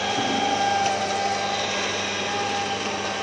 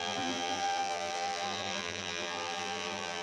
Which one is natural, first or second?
first